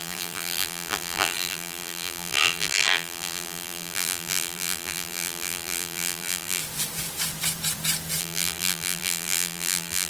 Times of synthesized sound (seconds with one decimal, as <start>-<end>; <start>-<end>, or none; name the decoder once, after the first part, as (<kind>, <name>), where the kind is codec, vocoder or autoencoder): 0.0-6.6 (vocoder, BigVGAN v2); 8.2-10.1